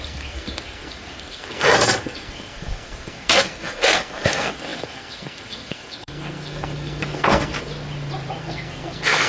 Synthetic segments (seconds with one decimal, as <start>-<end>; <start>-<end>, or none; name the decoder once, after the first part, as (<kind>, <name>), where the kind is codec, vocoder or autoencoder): 0.0-7.7 (codec, SNAC); 8.4-9.3